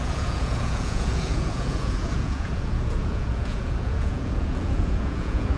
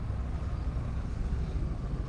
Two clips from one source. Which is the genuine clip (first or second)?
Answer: second